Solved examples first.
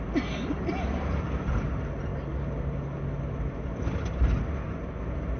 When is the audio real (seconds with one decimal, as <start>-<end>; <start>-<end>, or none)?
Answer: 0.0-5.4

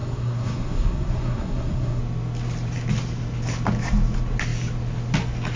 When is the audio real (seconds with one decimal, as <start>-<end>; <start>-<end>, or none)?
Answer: 2.0-5.6

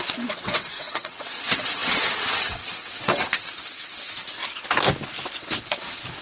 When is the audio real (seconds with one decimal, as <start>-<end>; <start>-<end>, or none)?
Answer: 4.4-5.4